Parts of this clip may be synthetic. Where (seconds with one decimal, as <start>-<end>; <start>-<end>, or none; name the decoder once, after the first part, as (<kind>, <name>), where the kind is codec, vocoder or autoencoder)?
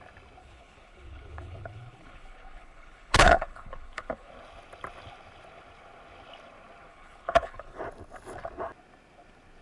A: 0.4-4.3 (codec, HILCodec); 6.9-7.8